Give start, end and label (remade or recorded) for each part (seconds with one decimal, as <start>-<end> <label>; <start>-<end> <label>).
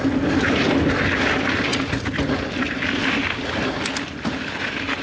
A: 0.0-5.0 recorded